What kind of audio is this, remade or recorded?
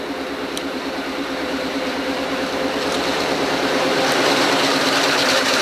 remade